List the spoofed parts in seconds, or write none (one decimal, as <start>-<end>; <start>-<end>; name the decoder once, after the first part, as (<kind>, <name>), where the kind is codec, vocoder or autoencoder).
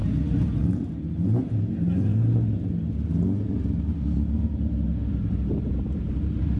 0.0-0.9 (vocoder, BigVGAN v2)